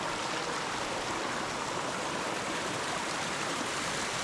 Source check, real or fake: real